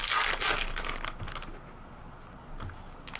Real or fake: real